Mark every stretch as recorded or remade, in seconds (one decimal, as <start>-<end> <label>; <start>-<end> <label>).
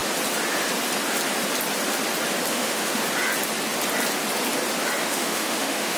0.0-2.5 recorded; 2.5-3.0 remade; 3.0-5.0 recorded; 5.0-6.0 remade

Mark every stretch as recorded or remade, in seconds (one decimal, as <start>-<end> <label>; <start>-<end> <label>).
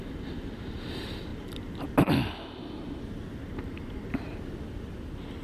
0.0-5.4 recorded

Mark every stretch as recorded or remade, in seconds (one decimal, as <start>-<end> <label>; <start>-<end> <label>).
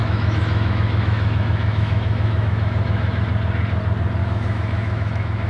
0.0-3.3 remade; 3.3-4.2 recorded; 4.2-5.5 remade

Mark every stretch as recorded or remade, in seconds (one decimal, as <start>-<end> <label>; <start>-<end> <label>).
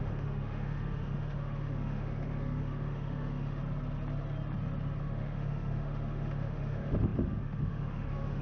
0.0-3.6 remade; 3.6-5.0 recorded; 5.0-8.4 remade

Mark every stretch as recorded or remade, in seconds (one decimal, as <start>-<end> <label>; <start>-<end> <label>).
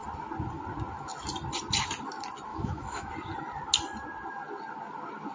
0.0-2.5 recorded; 2.5-3.1 remade; 3.1-5.3 recorded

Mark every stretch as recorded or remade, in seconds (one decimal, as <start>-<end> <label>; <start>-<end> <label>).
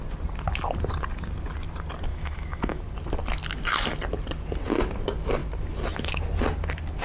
0.0-2.1 recorded; 2.1-2.8 remade; 2.8-7.0 recorded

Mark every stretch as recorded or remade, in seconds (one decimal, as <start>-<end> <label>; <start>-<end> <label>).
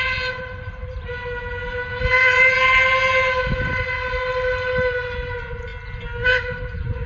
0.0-7.1 recorded